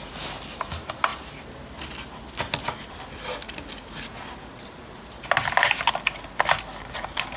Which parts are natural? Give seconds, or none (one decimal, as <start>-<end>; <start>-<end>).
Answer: 0.0-7.4